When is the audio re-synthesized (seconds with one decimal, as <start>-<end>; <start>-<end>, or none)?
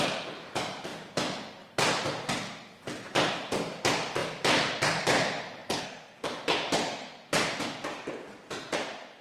0.0-0.9; 3.3-9.2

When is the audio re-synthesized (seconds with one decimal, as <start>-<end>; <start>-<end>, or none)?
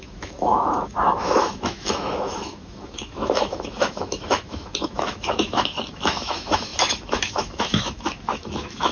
0.0-8.9